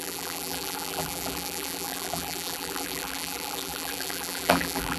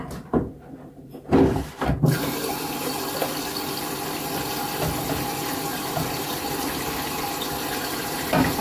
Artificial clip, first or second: first